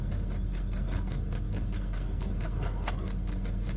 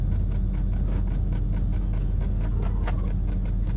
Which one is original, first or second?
second